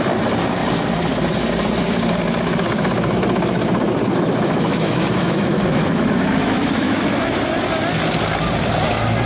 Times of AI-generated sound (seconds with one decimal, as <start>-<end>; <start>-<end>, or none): 4.1-7.0